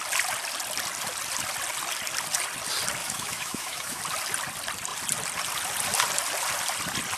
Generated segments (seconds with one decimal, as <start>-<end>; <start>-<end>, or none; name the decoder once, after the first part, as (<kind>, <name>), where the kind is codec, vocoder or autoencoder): 3.0-4.0 (autoencoder, DAC-VAE)